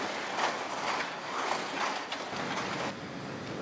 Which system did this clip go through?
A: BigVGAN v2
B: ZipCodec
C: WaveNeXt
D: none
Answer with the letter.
D